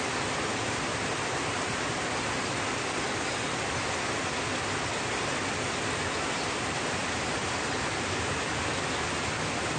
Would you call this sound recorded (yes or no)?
yes